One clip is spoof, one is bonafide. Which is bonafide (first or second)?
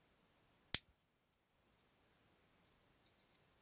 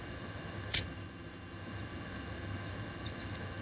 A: first